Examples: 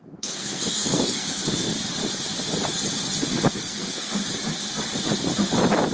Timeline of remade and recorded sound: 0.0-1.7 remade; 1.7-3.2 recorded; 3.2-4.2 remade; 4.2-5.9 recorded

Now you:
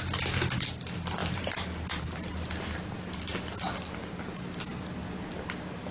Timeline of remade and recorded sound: 0.0-5.9 recorded

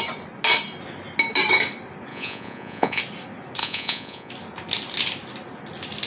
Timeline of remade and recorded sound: 0.0-2.1 recorded; 2.1-3.0 remade; 3.0-3.6 recorded; 3.6-4.3 remade; 4.3-6.1 recorded

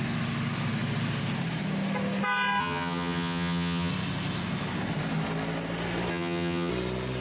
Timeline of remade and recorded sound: 0.0-2.6 recorded; 2.6-3.9 remade; 3.9-6.1 recorded; 6.1-6.7 remade; 6.7-7.2 recorded